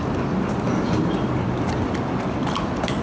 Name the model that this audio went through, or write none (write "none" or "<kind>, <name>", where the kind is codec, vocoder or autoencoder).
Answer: none